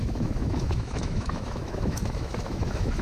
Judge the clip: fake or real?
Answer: fake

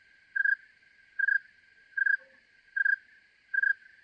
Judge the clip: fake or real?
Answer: real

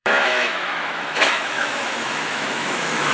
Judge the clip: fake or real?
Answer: fake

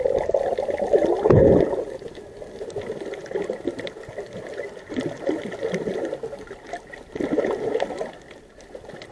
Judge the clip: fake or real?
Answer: real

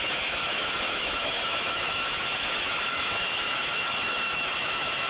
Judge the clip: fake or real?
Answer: fake